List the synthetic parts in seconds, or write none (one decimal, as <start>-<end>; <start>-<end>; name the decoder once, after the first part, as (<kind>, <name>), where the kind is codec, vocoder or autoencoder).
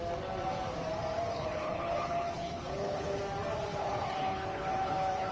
1.3-3.2 (codec, HILCodec); 3.7-5.3